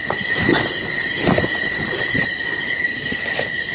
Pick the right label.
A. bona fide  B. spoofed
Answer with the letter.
A